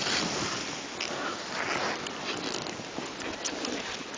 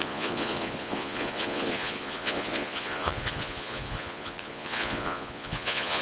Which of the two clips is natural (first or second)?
first